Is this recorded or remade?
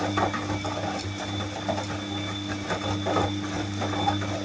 recorded